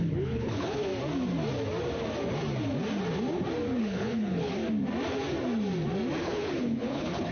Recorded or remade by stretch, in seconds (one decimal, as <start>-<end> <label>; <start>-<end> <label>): 0.0-0.9 remade; 0.9-3.8 recorded; 3.8-4.6 remade; 4.6-6.2 recorded; 6.2-7.3 remade